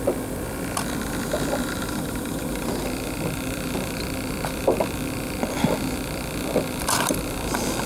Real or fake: fake